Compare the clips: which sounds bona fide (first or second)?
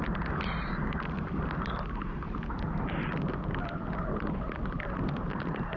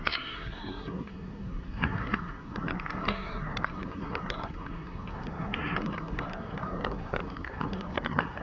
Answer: first